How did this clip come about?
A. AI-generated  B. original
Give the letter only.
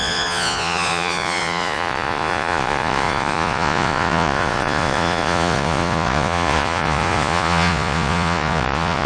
A